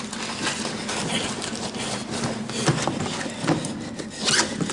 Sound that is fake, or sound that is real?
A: real